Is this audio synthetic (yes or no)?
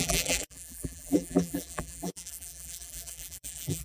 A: yes